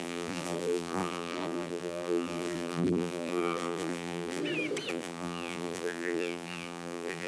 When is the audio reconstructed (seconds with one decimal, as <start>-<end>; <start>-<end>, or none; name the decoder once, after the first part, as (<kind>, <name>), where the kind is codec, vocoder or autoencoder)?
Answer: 0.0-4.4 (vocoder, BigVGAN v2); 4.9-7.3